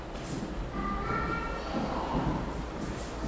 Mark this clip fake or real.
real